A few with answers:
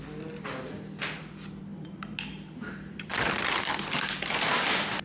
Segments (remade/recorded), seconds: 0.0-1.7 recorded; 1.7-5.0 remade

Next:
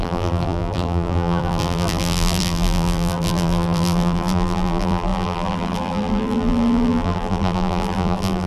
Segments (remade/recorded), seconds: 0.0-8.5 remade

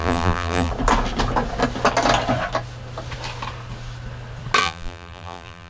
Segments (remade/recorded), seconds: 0.0-0.7 remade; 0.7-4.6 recorded; 4.6-5.7 remade

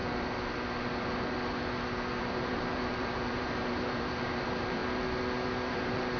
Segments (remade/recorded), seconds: 0.0-2.2 recorded; 2.2-4.8 remade; 4.8-5.7 recorded; 5.7-6.2 remade

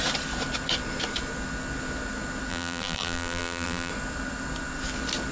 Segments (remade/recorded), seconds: 0.0-2.5 recorded; 2.5-3.9 remade; 3.9-5.3 recorded

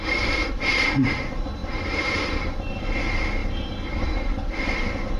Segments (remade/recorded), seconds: 0.0-3.4 remade; 3.4-5.2 recorded